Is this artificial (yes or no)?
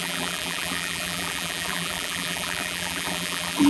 yes